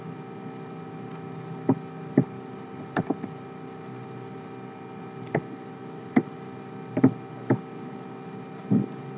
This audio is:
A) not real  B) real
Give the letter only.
B